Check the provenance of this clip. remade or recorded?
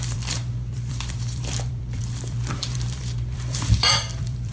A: remade